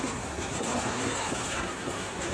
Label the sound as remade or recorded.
remade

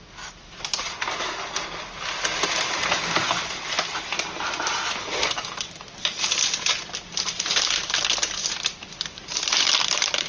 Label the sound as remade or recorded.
recorded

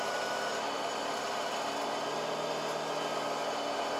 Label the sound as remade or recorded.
recorded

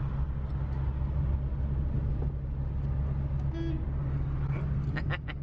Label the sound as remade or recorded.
recorded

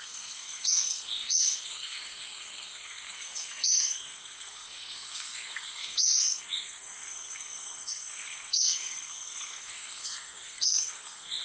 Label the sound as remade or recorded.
remade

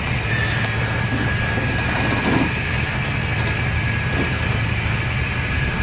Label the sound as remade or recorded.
recorded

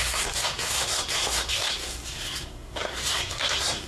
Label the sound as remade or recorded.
remade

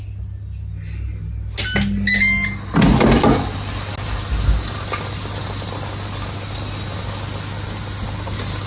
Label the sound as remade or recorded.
recorded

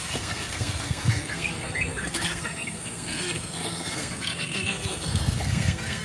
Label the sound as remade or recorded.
remade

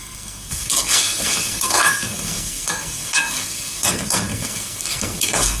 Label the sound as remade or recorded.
remade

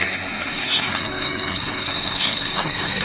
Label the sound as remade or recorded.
remade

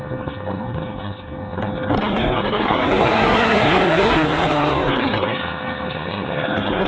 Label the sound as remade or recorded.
remade